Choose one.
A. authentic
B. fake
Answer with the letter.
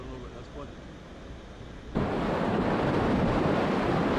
A